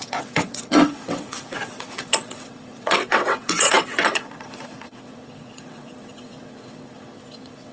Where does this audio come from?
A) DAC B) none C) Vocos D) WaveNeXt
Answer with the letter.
D